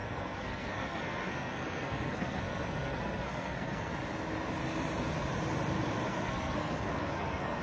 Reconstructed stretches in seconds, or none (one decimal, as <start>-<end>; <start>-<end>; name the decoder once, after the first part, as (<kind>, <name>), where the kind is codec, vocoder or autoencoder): 0.0-3.9 (codec, SNAC); 6.1-7.6